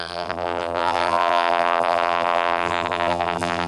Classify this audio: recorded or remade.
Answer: remade